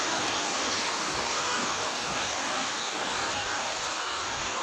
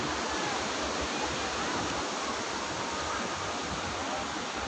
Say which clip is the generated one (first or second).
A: first